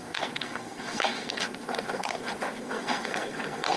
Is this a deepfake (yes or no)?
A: yes